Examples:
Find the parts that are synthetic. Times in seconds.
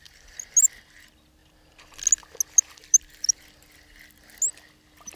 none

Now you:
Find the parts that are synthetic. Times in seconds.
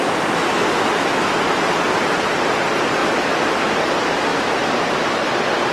none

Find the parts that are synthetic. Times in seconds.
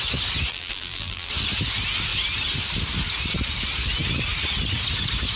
0.5-1.3 (vocoder, BigVGAN v2)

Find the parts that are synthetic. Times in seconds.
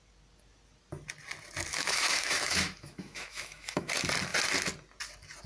1.7-3.9 (autoencoder, DAC-VAE)